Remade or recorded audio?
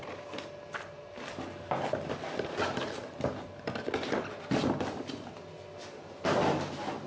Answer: recorded